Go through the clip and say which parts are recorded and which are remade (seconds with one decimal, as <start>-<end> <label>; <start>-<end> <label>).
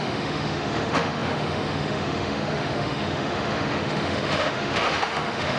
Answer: 0.0-5.6 remade